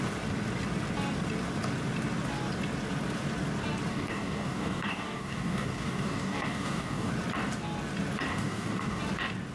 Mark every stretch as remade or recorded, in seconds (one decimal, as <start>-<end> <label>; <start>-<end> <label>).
0.0-3.9 recorded; 3.9-7.1 remade; 7.1-8.3 recorded; 8.3-9.0 remade; 9.0-9.5 recorded